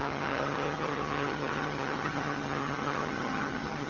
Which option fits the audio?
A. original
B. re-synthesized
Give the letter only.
B